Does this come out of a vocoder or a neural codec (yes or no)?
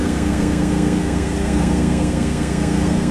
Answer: yes